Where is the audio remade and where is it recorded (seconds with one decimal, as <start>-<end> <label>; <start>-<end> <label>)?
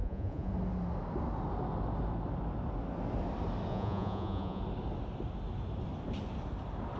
0.0-0.5 remade; 0.5-3.7 recorded; 3.7-4.6 remade; 4.6-7.0 recorded